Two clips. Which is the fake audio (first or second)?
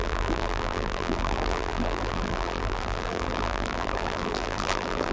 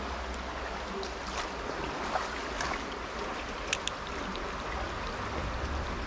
first